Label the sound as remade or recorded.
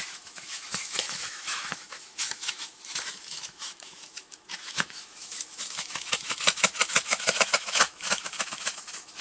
remade